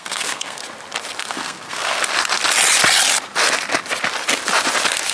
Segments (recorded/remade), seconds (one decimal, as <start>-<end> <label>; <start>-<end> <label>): 0.0-0.6 remade; 0.6-1.2 recorded; 1.2-2.0 remade; 2.0-5.1 recorded